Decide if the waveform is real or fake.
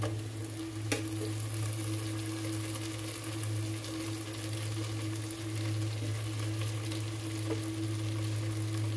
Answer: real